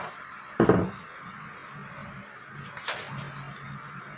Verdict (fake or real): real